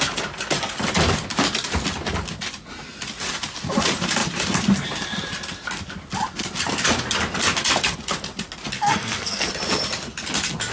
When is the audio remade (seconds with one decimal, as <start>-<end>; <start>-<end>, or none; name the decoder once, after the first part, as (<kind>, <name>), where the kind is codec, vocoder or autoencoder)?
8.8-9.5 (codec, SNAC)